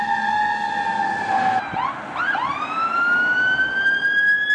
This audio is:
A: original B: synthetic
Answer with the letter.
A